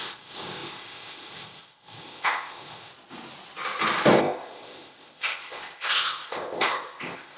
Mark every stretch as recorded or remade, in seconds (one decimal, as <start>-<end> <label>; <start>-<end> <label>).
0.0-2.9 remade; 2.9-4.2 recorded; 4.2-7.4 remade